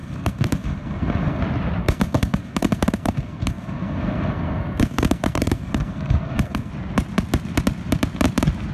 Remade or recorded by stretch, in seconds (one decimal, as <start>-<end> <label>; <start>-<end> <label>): 0.0-1.4 remade; 1.4-1.8 recorded; 1.8-6.7 remade; 6.7-8.7 recorded